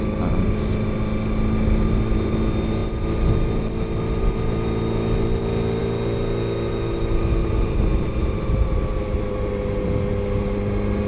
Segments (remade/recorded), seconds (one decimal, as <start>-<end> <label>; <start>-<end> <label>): 0.0-7.4 recorded; 7.4-8.3 remade; 8.3-11.1 recorded